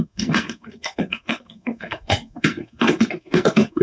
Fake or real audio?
fake